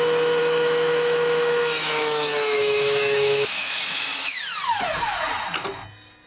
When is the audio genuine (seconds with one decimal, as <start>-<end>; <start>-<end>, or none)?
0.0-0.4; 4.2-6.3